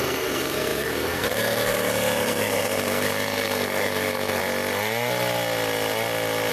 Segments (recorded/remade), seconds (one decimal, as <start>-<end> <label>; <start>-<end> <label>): 0.0-4.4 remade; 4.4-6.5 recorded